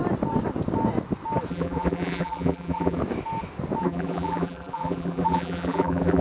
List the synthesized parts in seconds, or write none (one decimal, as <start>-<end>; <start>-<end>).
1.5-3.0; 3.8-6.2